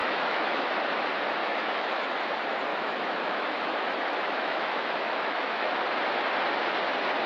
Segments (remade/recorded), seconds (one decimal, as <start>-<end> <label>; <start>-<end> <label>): 0.0-0.7 remade; 0.7-1.4 recorded; 1.4-2.3 remade; 2.3-2.7 recorded; 2.7-5.8 remade; 5.8-7.3 recorded